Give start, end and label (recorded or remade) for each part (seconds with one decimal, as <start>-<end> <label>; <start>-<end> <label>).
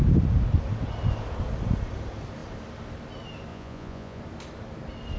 0.0-3.5 recorded; 3.5-4.2 remade; 4.2-5.2 recorded